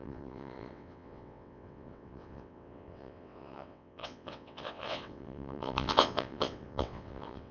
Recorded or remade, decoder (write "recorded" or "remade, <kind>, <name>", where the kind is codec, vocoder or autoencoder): remade, vocoder, WaveNeXt